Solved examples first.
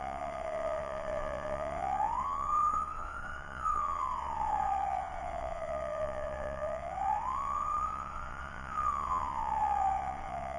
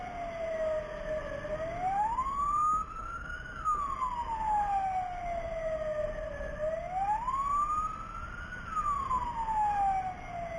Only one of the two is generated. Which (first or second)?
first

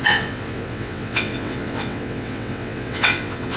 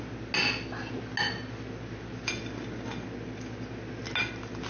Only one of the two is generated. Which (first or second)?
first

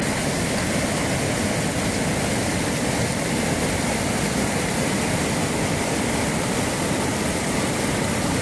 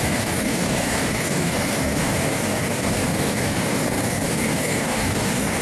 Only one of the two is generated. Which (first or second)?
second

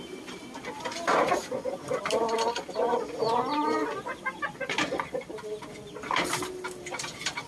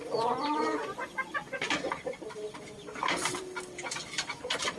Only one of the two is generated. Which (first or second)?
second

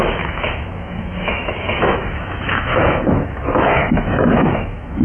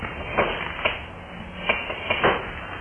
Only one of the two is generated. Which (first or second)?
first